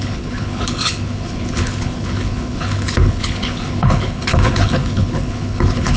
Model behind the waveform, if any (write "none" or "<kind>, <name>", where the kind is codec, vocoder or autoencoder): codec, HILCodec